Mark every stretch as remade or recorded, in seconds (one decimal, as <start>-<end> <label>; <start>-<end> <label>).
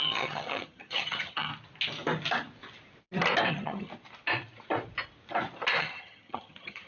0.0-1.5 remade; 1.5-3.5 recorded; 3.5-3.9 remade; 3.9-5.8 recorded; 5.8-6.9 remade